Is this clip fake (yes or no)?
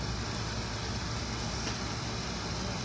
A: no